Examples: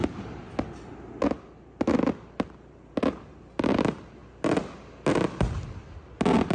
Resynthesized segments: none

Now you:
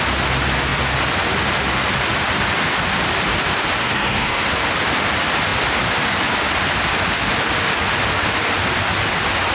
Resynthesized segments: 3.8-4.5 (codec, SNAC)

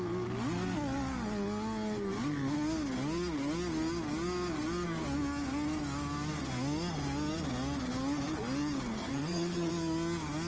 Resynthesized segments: 9.0-9.7 (vocoder, HiFi-GAN)

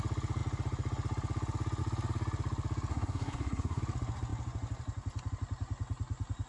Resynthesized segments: 2.9-3.8 (codec, SNAC)

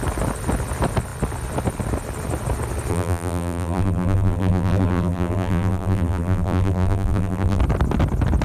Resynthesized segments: 2.9-7.6 (vocoder, BigVGAN v2)

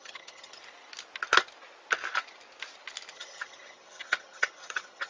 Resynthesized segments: 0.0-0.6 (vocoder, HiFi-GAN); 3.1-5.1

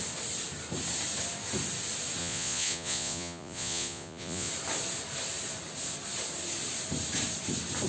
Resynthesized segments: 2.2-4.5 (vocoder, Vocos)

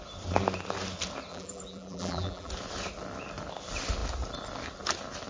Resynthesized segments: 1.3-2.5 (vocoder, BigVGAN v2)